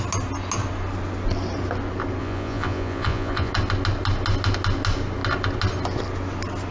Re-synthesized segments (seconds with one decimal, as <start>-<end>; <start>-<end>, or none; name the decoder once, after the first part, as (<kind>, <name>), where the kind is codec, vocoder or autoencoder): 2.2-3.5 (vocoder, Vocos)